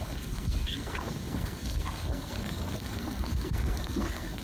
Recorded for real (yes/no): no